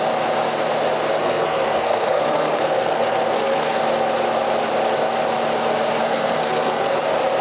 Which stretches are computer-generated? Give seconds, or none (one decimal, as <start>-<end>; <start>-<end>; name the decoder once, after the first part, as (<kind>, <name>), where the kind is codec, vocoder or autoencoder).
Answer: 1.2-3.8 (codec, SNAC); 6.0-6.9